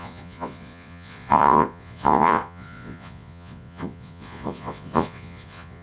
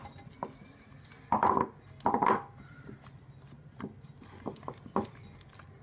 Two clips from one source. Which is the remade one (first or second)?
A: first